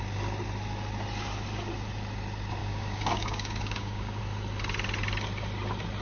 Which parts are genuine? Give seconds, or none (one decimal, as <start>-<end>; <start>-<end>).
0.0-2.6; 4.2-6.0

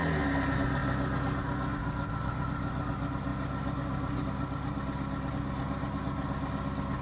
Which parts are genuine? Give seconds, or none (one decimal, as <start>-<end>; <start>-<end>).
0.0-7.0

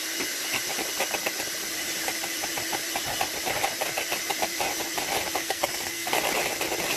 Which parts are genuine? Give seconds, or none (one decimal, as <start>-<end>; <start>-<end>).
0.0-5.4; 6.2-7.0